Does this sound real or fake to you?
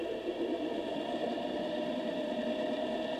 fake